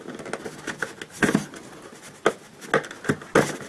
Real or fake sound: real